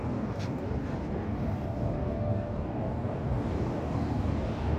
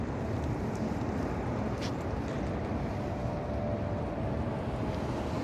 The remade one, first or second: first